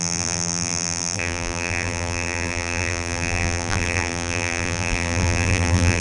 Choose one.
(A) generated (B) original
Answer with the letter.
A